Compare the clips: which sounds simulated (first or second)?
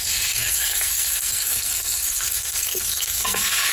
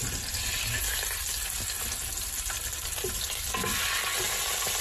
first